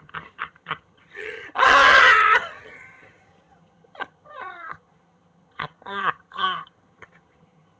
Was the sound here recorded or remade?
remade